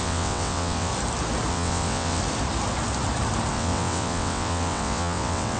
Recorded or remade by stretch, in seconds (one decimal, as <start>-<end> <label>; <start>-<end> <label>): 0.0-0.9 remade; 0.9-1.5 recorded; 1.5-2.2 remade; 2.2-3.5 recorded; 3.5-5.6 remade